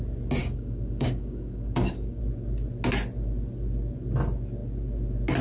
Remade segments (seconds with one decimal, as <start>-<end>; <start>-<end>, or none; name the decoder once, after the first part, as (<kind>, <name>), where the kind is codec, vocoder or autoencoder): 0.4-2.2 (codec, DAC)

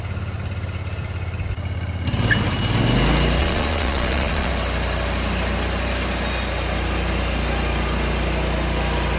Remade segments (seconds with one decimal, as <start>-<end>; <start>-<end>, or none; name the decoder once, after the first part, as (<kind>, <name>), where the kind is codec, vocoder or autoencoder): 3.4-4.5 (vocoder, Vocos)

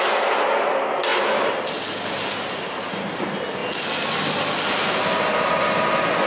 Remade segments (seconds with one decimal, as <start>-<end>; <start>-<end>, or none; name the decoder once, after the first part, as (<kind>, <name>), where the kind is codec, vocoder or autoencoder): none

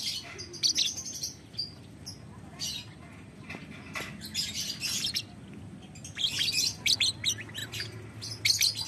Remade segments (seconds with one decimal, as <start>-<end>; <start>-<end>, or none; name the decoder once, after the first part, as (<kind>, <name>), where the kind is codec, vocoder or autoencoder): none

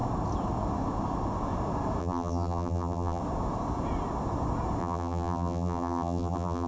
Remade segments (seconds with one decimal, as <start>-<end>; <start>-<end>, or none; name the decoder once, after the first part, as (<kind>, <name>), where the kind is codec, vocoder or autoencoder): 2.0-3.2 (vocoder, BigVGAN v2); 4.8-6.7

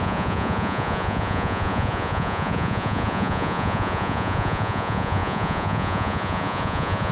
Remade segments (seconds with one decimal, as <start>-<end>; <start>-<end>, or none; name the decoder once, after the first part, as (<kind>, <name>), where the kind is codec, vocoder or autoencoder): 0.0-7.1 (vocoder, Vocos)

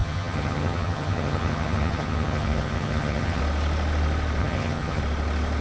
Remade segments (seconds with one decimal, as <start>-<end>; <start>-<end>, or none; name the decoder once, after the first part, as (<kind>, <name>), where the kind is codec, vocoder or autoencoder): 0.0-3.4 (vocoder, HiFi-GAN); 4.4-5.0